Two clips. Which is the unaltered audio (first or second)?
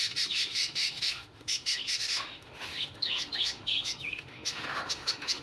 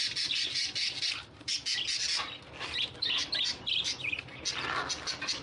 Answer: second